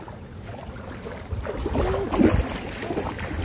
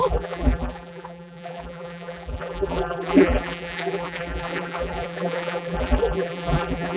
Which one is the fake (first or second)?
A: second